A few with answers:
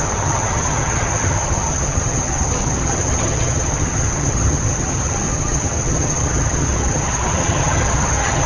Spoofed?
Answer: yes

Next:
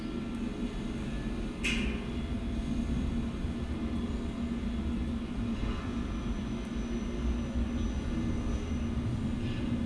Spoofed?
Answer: no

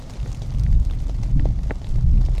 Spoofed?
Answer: no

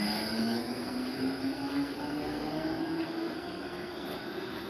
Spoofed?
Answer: yes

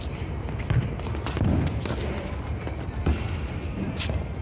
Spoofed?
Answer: yes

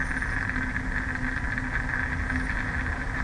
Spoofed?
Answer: no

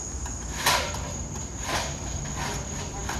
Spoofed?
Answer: no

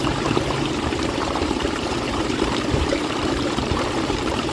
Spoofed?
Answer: yes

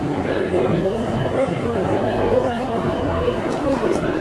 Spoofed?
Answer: yes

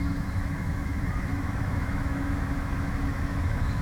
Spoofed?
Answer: yes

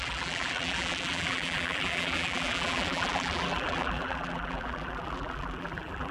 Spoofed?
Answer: yes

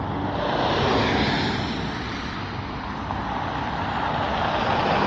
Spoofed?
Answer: no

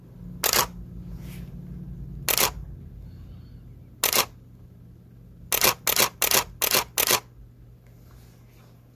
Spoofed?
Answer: no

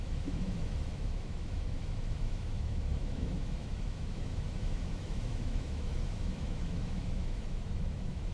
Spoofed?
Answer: yes